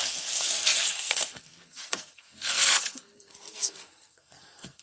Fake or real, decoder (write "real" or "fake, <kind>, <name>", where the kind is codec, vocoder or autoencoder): fake, codec, SNAC